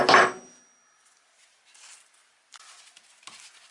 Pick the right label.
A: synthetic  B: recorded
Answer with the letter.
B